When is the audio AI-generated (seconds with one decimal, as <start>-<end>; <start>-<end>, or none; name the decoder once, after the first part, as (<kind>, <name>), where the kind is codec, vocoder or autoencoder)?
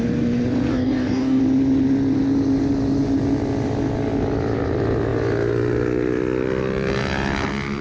0.7-1.4 (codec, DAC)